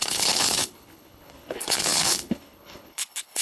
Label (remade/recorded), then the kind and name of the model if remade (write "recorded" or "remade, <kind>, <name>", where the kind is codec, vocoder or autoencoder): remade, codec, HILCodec